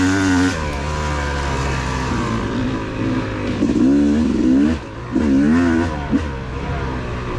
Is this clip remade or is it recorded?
recorded